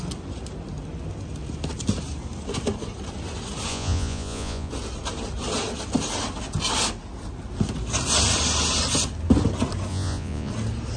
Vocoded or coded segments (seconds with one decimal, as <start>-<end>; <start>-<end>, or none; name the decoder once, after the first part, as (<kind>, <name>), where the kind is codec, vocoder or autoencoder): 3.7-4.7 (vocoder, Vocos); 9.9-10.5

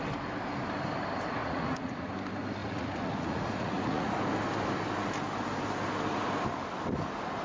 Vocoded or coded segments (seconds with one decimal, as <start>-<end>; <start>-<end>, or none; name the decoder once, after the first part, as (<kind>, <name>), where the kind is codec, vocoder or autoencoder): 1.4-2.1 (vocoder, Vocos); 2.6-4.1

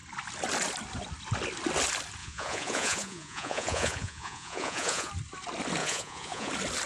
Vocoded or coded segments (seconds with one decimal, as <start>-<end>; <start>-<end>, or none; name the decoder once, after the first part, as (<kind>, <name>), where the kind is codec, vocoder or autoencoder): 2.2-5.1 (vocoder, Vocos); 5.8-6.5

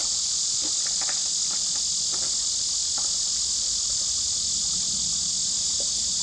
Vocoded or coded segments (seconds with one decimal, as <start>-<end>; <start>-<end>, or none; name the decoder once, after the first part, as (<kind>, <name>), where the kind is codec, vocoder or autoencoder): 0.0-0.6 (vocoder, Vocos)

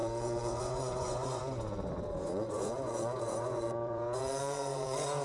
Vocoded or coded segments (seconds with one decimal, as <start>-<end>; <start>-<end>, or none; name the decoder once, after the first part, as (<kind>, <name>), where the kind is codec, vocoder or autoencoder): 0.0-1.4 (vocoder, Vocos); 2.1-5.2

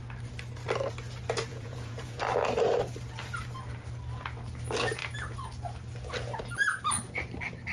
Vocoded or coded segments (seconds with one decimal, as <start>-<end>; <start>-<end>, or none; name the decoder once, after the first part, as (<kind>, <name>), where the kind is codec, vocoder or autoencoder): 1.5-2.2 (vocoder, Vocos)

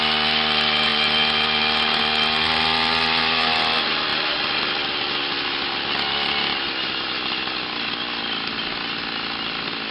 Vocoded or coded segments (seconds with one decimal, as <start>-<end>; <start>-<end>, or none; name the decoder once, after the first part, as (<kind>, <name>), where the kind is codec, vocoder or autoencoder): none

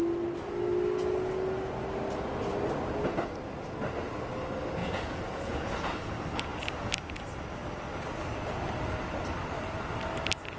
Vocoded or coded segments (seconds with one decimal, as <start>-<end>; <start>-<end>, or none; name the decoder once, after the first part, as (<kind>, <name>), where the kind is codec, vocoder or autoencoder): 4.8-6.1 (vocoder, Vocos)